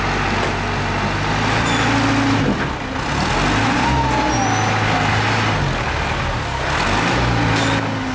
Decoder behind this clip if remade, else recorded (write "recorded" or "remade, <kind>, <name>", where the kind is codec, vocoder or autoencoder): recorded